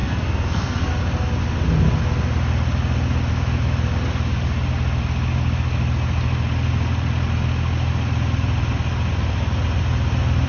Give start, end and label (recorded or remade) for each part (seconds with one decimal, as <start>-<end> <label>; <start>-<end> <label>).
0.0-0.9 remade; 0.9-10.5 recorded